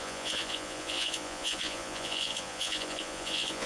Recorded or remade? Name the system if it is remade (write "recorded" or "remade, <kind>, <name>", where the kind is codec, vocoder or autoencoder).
remade, vocoder, Vocos